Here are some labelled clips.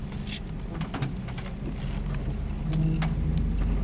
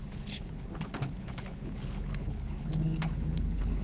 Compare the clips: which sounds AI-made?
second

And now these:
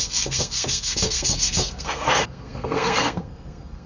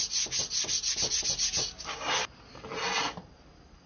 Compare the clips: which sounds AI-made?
first